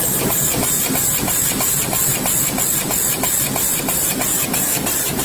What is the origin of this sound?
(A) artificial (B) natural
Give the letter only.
B